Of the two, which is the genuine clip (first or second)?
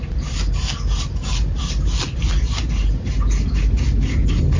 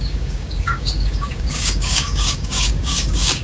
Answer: first